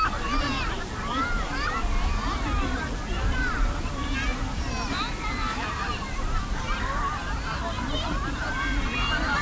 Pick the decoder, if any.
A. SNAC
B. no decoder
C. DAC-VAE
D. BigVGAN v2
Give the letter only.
D